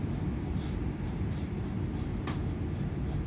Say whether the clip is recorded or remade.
recorded